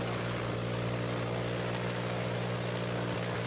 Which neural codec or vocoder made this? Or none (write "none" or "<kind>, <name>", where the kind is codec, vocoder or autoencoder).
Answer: none